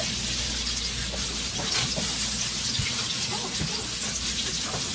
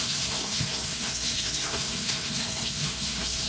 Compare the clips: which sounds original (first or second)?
first